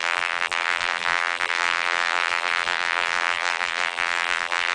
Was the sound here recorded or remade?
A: remade